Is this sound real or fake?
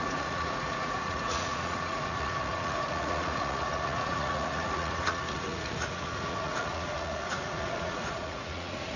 fake